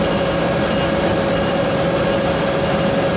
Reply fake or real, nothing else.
real